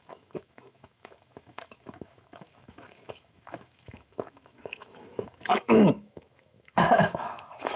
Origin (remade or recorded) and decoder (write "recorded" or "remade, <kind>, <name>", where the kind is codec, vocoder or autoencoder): remade, autoencoder, DAC-VAE